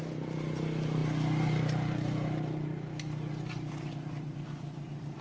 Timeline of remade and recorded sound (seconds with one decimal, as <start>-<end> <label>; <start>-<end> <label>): 0.0-5.2 recorded